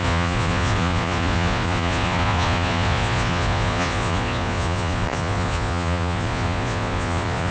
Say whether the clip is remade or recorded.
remade